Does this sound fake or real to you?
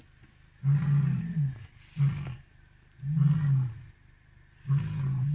real